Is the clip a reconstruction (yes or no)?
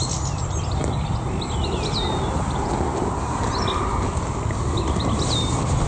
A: no